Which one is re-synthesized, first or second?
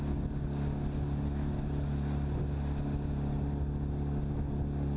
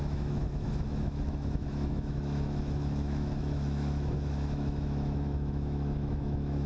second